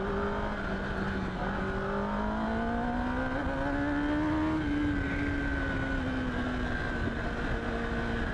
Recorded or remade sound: recorded